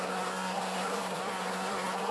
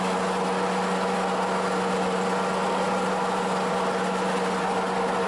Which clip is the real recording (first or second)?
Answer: second